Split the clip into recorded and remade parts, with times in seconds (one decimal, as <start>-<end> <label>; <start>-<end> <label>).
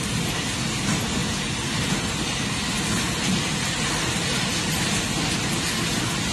0.0-6.3 recorded